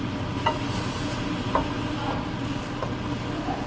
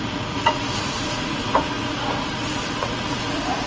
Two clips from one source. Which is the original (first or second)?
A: first